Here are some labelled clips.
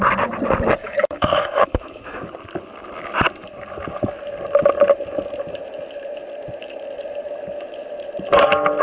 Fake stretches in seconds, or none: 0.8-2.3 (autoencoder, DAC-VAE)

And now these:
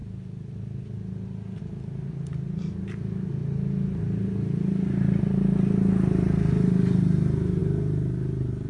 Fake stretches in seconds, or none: none

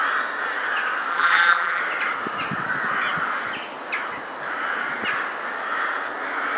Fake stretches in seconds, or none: 1.1-1.8 (vocoder, BigVGAN v2)